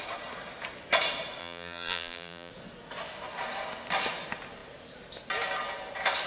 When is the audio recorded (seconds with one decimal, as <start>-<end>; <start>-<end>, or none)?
0.0-1.4; 2.5-6.3